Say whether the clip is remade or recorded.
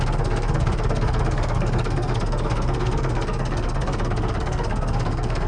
remade